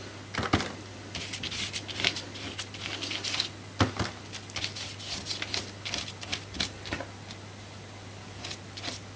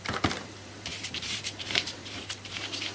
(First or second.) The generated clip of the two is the second